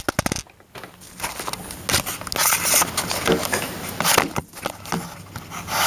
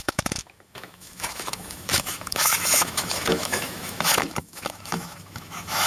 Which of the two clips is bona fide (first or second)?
first